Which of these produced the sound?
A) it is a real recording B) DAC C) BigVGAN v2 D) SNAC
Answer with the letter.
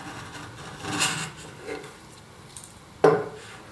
A